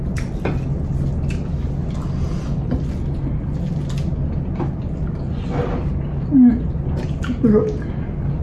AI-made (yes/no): no